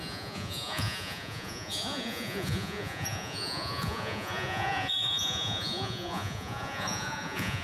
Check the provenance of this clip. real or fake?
fake